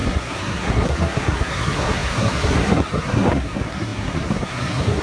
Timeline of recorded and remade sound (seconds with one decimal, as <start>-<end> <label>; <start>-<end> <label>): 0.0-5.0 remade